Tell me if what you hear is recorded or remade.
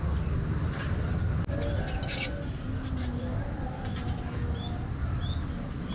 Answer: recorded